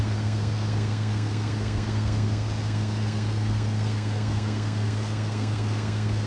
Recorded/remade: remade